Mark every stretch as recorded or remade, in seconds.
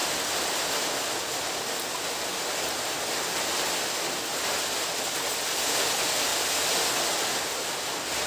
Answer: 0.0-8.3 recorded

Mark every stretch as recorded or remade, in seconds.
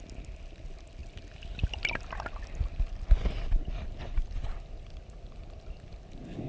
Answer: 0.0-6.5 recorded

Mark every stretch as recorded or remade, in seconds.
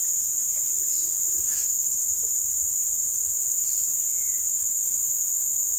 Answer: 0.0-1.4 recorded; 1.4-2.1 remade; 2.1-3.0 recorded; 3.0-3.6 remade; 3.6-4.5 recorded; 4.5-5.8 remade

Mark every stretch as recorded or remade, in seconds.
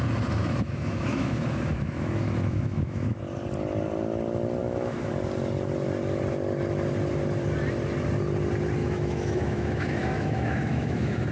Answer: 0.0-0.4 recorded; 0.4-3.2 remade; 3.2-4.6 recorded; 4.6-5.1 remade; 5.1-8.8 recorded; 8.8-11.3 remade